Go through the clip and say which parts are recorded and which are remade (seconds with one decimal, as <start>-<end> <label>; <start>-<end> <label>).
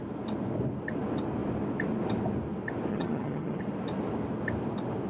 0.0-2.9 recorded; 2.9-3.6 remade; 3.6-5.1 recorded